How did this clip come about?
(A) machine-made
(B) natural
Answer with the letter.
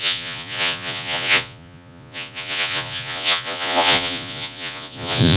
A